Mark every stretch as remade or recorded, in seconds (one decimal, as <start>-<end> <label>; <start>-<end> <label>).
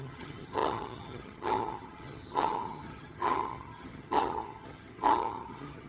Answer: 0.0-5.9 remade